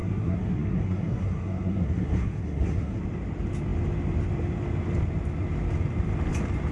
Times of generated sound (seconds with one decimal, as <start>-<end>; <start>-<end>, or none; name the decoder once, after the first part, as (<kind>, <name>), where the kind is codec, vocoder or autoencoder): 0.0-3.0 (codec, SNAC)